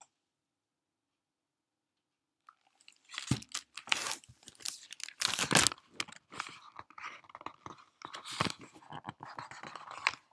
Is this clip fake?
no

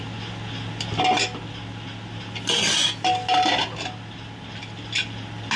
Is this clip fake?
no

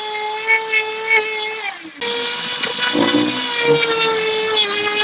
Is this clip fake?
no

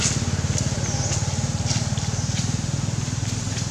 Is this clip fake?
no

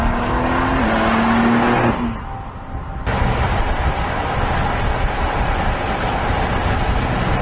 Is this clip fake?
no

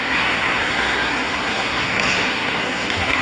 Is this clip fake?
yes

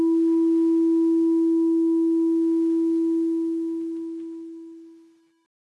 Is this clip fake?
no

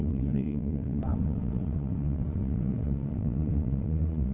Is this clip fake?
yes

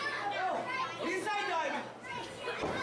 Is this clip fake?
no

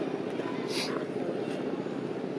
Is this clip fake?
no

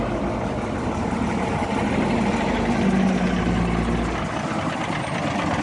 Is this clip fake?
no